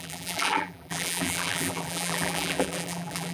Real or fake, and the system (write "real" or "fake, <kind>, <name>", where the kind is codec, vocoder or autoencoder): fake, vocoder, BigVGAN v2